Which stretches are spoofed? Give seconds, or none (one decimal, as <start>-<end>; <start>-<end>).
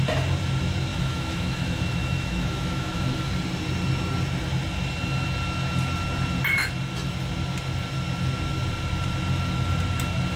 0.9-3.3